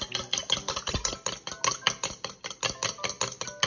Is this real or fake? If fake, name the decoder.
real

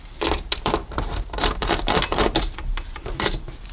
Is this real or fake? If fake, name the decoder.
fake, vocoder, BigVGAN v2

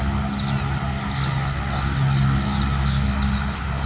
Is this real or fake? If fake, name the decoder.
real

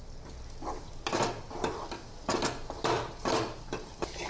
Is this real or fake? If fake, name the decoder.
real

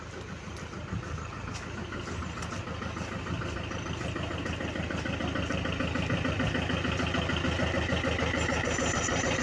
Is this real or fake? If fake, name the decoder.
real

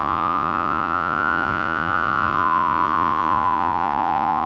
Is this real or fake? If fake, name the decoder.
fake, vocoder, Vocos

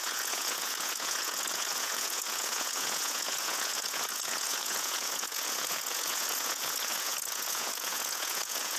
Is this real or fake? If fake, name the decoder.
fake, vocoder, Vocos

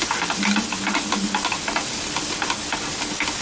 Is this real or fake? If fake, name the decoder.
real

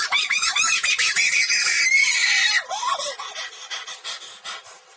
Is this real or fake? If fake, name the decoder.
real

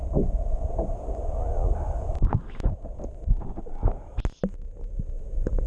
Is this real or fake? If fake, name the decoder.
real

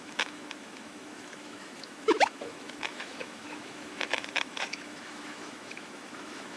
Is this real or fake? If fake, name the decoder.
fake, autoencoder, DAC-VAE